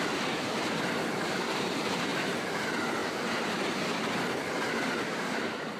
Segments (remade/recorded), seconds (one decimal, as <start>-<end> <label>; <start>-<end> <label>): 0.0-3.0 remade; 3.0-5.1 recorded; 5.1-5.8 remade